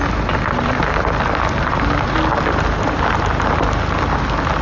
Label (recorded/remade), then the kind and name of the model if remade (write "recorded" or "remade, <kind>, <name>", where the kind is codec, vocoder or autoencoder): recorded